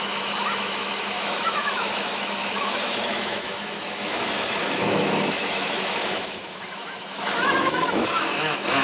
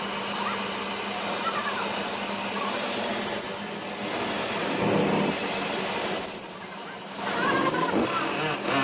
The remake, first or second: first